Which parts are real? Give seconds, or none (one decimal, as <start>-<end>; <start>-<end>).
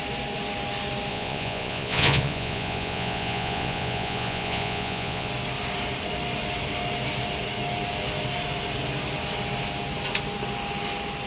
0.0-1.1; 5.3-11.3